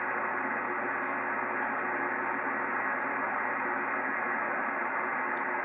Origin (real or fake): real